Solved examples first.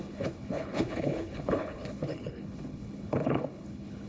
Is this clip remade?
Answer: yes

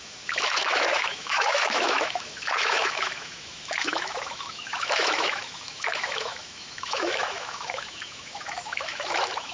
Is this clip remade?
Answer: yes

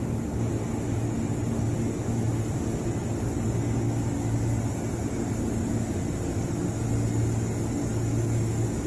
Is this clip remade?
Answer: no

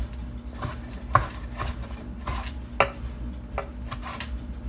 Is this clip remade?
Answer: no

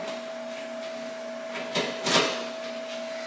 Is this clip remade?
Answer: no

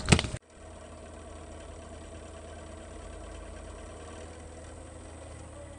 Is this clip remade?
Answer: no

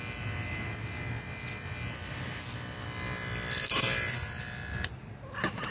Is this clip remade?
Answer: no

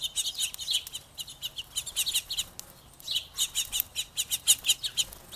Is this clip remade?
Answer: no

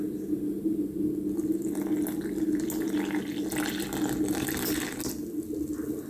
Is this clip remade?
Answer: no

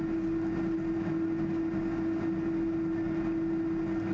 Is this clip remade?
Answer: no